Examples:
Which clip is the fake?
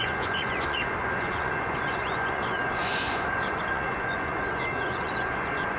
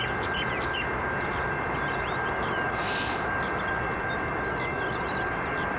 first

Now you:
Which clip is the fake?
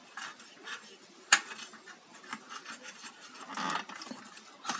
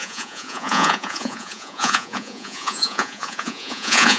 second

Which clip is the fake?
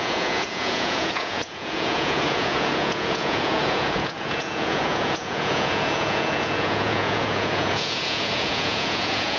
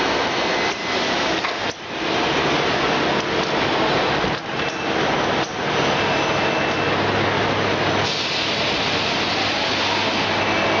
first